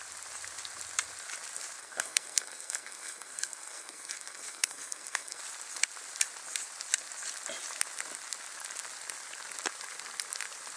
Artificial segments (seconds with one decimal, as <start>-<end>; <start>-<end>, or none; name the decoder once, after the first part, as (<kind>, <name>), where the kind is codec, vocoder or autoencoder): 1.8-5.4 (codec, SNAC)